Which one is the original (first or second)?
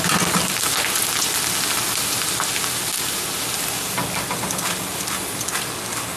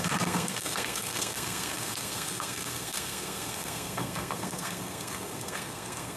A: first